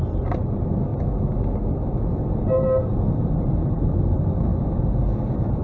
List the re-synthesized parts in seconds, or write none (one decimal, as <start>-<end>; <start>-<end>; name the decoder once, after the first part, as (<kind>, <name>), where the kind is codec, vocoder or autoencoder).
none